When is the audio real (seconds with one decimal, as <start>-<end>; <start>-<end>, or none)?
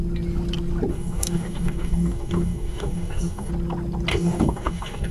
0.0-0.9; 3.5-4.1